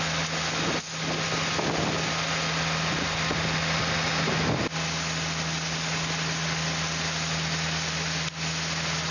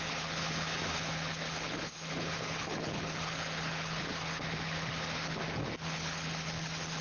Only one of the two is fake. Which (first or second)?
second